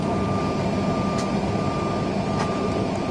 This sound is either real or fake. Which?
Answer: real